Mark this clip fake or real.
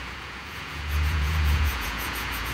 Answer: fake